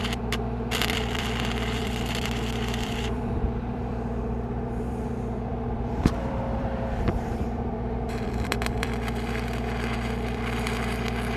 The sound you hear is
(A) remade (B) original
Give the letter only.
A